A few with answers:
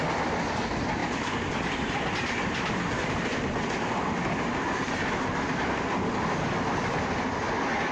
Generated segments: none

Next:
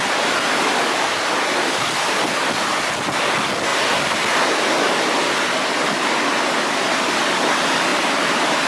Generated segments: 7.9-8.7

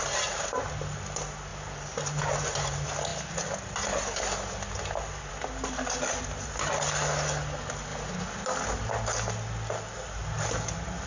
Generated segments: none

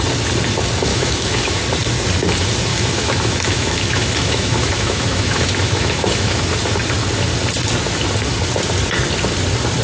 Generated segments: 0.9-1.6; 2.7-6.5

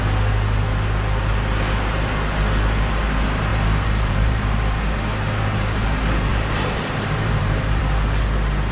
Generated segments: 3.5-4.8; 6.3-7.8